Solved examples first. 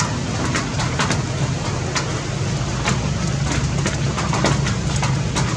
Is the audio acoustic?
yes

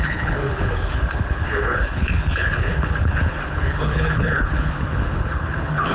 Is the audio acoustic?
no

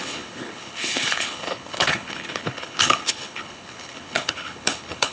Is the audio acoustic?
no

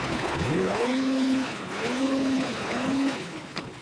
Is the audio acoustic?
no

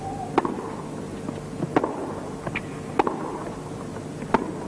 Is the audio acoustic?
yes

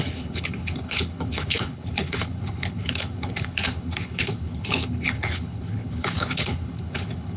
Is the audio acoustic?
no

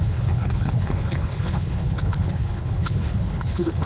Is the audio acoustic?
no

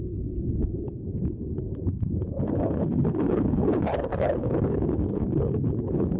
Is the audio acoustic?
no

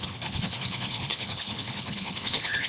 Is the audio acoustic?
no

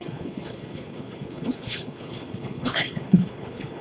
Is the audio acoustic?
no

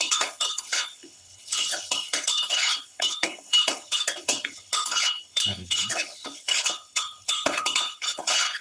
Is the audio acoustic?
no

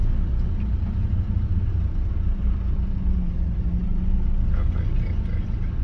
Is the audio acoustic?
yes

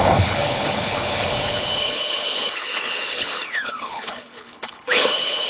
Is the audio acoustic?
no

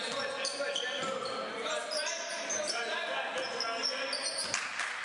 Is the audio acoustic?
yes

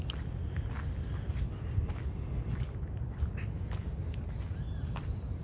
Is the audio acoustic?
yes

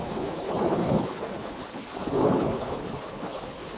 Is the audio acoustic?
no